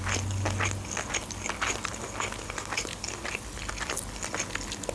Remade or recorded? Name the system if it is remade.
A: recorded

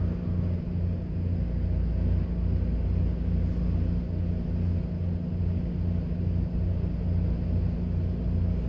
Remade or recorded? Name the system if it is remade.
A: recorded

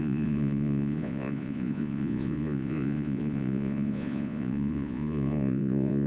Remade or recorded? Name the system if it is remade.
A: remade, vocoder, Vocos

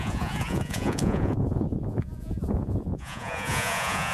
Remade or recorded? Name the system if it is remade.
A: remade, vocoder, Vocos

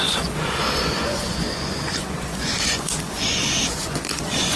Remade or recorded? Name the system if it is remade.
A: remade, vocoder, Vocos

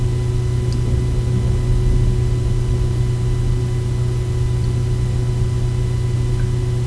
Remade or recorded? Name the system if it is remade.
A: recorded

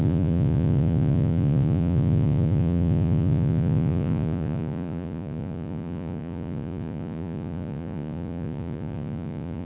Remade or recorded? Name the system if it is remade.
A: remade, vocoder, Vocos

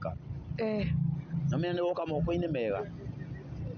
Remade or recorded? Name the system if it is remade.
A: recorded